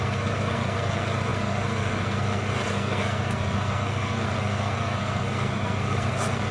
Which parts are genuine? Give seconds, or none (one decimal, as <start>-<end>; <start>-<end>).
none